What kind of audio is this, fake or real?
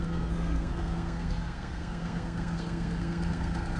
fake